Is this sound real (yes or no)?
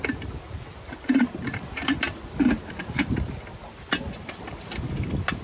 yes